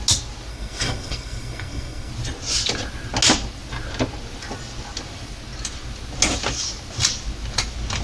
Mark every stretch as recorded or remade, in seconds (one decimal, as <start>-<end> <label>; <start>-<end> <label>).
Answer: 0.0-0.5 recorded; 0.5-2.1 remade; 2.1-8.0 recorded